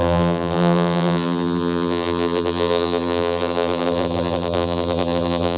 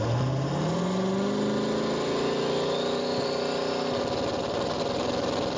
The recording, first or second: second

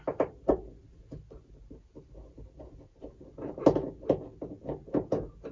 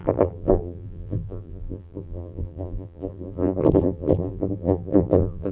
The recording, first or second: first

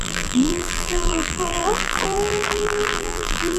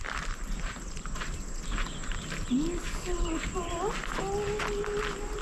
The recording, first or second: second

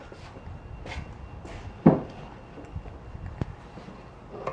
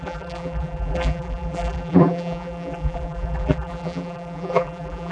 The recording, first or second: first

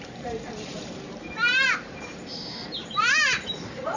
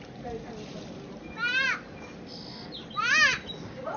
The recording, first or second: second